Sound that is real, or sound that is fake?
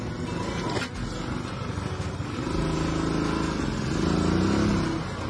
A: real